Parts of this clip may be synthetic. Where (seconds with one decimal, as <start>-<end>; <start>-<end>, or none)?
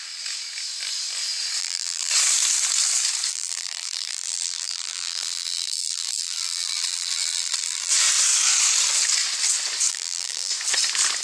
1.6-2.1; 3.3-7.9; 9.9-10.5